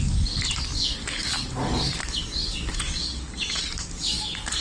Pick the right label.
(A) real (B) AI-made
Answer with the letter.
B